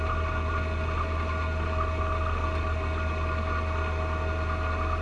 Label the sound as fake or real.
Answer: real